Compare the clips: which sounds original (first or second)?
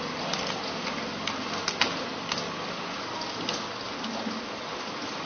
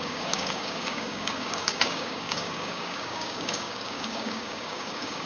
first